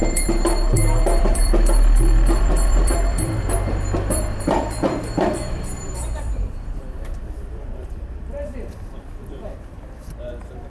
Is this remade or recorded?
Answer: remade